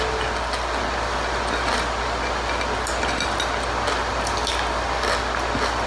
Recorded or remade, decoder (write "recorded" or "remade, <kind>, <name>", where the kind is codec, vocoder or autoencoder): recorded